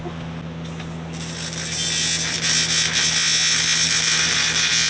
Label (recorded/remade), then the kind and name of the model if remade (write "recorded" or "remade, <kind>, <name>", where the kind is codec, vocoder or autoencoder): recorded